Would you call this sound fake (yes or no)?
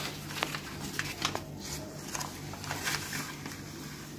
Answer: no